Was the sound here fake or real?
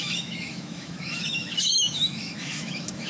fake